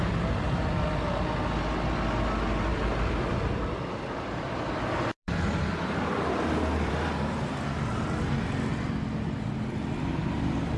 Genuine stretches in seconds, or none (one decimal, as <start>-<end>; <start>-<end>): 0.0-2.7; 6.9-8.7; 10.1-10.8